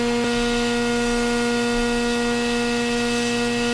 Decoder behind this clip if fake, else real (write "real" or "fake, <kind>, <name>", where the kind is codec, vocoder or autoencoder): real